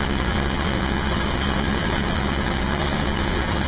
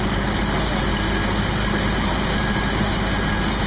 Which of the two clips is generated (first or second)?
first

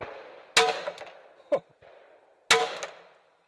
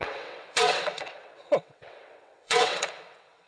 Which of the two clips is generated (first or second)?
second